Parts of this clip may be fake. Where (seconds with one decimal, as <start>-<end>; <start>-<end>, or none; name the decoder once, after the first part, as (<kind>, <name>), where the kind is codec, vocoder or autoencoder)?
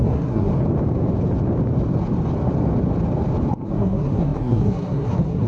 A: 0.0-0.5 (codec, SNAC); 3.5-5.5